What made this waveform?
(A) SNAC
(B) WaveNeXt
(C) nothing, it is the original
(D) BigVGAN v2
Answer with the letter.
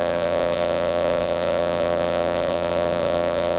D